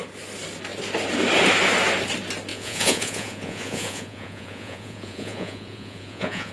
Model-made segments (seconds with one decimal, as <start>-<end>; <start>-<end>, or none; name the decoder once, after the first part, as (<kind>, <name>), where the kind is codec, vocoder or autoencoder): 2.5-6.5 (vocoder, Vocos)